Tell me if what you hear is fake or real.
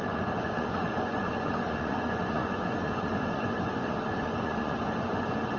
fake